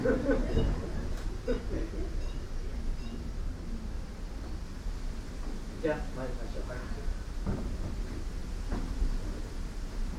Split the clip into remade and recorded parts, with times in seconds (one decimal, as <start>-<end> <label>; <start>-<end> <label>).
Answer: 0.0-0.4 recorded; 0.4-1.6 remade; 1.6-10.2 recorded